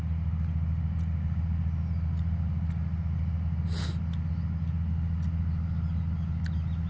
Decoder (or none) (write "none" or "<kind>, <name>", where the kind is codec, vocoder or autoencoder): none